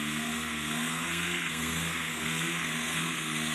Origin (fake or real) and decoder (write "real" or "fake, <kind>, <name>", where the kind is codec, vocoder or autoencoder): fake, codec, SNAC